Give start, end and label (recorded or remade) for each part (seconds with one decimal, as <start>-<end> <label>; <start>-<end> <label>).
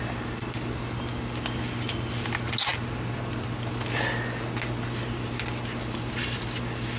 0.0-7.0 recorded